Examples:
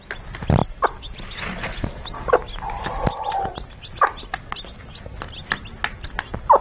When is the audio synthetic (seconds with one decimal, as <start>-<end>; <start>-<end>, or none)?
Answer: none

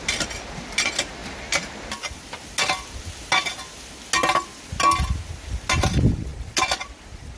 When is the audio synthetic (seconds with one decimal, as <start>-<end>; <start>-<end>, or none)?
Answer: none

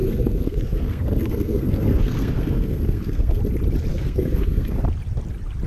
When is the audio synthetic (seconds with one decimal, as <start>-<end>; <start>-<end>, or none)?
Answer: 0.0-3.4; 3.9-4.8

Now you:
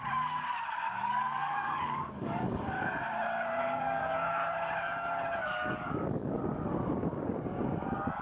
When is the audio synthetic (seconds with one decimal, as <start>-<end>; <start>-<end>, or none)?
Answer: 0.8-3.0; 3.6-4.5; 5.4-6.4